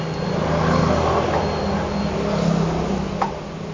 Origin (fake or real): real